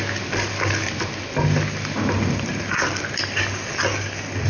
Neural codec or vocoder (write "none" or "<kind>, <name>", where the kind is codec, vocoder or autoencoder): none